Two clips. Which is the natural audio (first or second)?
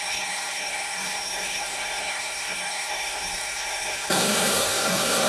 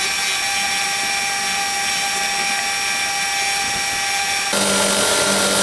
second